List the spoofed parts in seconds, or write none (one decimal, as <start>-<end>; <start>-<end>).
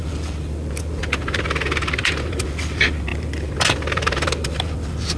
none